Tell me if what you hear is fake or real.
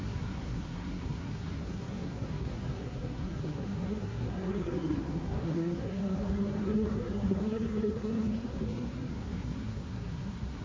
fake